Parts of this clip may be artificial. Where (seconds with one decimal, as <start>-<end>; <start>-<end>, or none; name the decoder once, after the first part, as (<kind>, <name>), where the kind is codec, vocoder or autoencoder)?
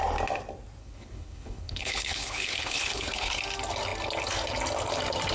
0.8-3.4 (codec, HILCodec)